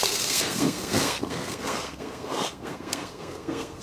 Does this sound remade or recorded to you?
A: remade